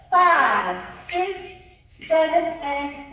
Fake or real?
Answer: fake